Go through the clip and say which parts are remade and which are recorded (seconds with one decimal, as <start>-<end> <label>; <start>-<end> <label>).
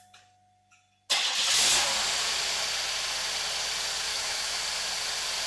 0.0-4.1 recorded; 4.1-4.6 remade; 4.6-5.5 recorded